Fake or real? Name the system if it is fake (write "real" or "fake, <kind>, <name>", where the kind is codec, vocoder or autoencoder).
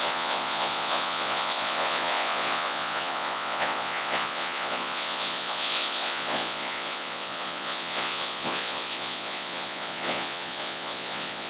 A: fake, vocoder, Vocos